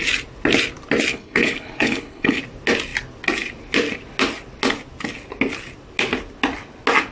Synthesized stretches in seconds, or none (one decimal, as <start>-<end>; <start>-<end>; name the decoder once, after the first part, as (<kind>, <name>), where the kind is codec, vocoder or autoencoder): 1.1-2.4 (codec, HILCodec)